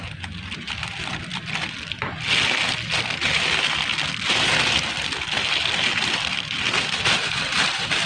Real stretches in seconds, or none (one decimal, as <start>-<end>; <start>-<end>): 0.0-8.1